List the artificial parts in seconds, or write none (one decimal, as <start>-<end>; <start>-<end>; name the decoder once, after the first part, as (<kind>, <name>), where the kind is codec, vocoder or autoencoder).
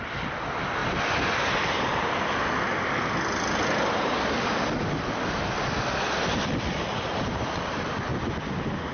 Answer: none